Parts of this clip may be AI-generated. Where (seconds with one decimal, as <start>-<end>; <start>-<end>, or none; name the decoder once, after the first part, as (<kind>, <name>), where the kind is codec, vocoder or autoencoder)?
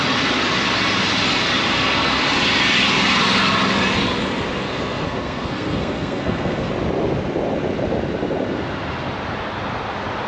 4.6-6.7 (codec, SNAC)